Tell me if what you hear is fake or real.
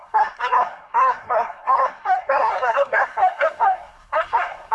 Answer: fake